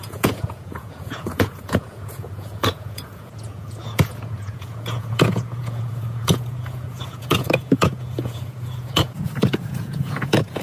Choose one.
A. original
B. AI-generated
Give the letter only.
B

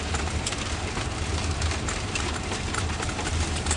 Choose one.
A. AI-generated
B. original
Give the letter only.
A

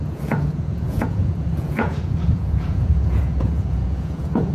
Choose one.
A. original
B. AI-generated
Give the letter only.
B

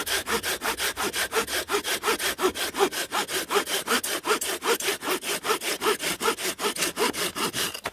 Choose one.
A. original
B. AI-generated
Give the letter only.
A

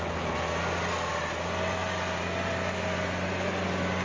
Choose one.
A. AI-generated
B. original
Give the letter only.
B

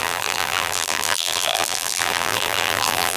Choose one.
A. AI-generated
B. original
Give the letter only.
A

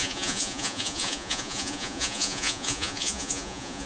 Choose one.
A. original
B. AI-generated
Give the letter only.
B